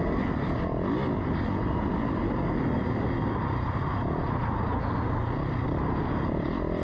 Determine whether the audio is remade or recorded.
recorded